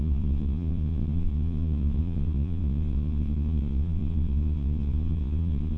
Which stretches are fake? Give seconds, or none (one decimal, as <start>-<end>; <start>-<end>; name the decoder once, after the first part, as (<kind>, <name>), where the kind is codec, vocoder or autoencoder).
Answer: 0.0-5.8 (vocoder, Vocos)